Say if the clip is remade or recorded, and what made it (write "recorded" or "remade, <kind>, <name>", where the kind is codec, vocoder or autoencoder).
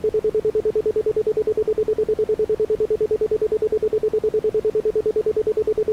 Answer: recorded